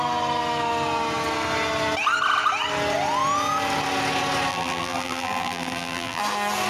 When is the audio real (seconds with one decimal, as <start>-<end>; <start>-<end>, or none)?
0.0-4.5; 6.2-6.7